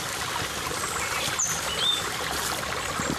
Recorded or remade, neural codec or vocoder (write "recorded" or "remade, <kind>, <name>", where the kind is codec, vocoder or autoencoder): remade, vocoder, BigVGAN v2